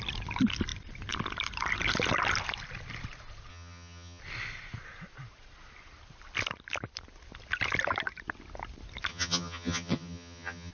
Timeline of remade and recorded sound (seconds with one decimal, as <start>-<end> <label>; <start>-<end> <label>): 0.0-3.5 recorded; 3.5-4.2 remade; 4.2-9.1 recorded; 9.1-10.7 remade